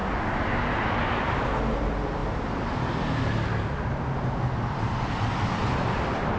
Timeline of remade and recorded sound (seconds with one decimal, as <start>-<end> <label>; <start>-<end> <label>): 0.0-6.4 recorded